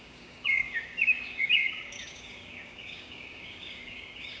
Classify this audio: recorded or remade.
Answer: remade